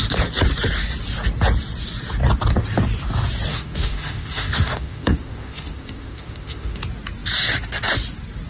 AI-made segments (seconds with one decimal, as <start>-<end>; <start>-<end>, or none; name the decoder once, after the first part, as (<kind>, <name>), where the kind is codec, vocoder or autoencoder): 3.5-6.8 (autoencoder, DAC-VAE)